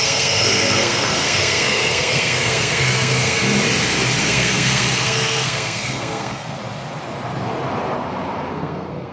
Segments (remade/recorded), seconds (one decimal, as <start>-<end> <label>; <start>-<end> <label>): 0.0-3.4 remade; 3.4-4.2 recorded; 4.2-6.6 remade; 6.6-8.5 recorded; 8.5-9.1 remade